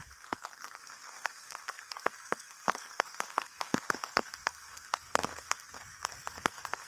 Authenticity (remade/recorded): remade